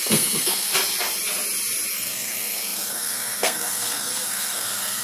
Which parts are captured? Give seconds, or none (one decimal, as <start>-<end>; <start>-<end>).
0.7-1.9